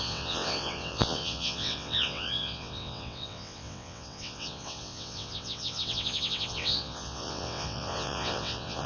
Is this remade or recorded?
remade